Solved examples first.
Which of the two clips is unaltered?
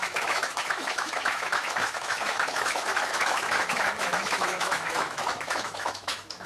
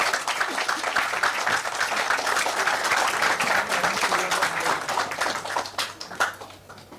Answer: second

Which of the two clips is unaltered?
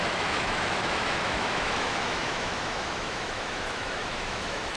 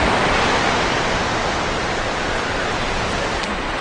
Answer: second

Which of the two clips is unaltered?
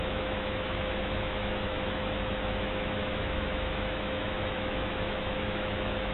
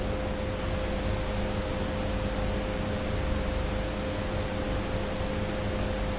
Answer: second